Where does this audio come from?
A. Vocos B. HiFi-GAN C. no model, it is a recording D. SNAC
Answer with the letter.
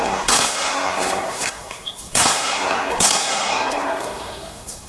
D